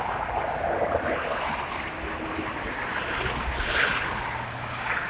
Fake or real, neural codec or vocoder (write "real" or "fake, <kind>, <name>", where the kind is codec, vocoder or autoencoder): real